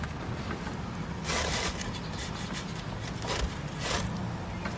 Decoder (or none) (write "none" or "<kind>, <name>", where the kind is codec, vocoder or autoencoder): none